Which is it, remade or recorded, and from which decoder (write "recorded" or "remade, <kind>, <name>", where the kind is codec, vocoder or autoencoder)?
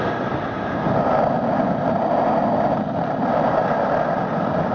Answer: recorded